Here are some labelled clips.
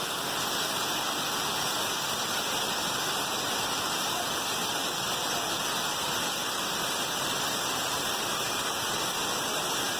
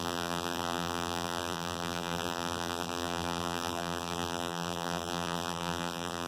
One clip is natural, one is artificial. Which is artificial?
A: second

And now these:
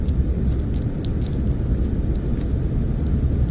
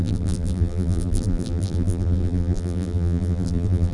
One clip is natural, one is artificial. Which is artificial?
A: second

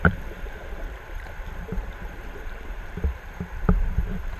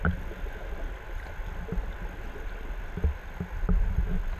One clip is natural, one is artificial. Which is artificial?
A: first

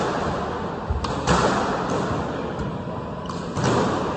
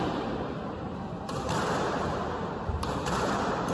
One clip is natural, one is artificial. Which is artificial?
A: second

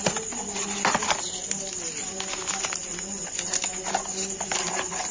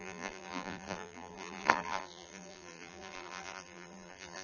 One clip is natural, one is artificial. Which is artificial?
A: second